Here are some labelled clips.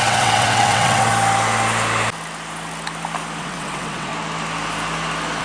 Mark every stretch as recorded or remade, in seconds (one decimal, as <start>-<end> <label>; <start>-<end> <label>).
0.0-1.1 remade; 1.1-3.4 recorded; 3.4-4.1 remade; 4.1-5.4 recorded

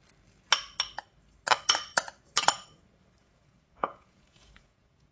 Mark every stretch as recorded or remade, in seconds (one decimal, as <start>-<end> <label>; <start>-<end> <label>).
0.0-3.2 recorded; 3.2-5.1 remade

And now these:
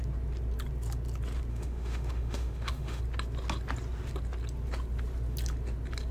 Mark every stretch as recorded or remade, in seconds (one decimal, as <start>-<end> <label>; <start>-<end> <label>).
0.0-1.5 recorded; 1.5-3.0 remade; 3.0-6.1 recorded

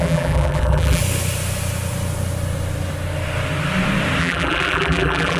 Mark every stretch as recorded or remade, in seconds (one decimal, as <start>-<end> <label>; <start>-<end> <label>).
0.0-1.0 remade; 1.0-4.2 recorded; 4.2-5.4 remade